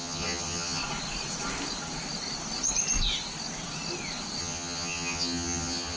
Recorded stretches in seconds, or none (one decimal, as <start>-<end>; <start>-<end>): 0.8-4.4